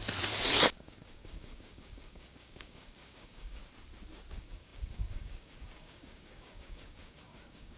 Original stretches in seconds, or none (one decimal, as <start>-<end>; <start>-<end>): 0.0-0.8; 3.6-4.3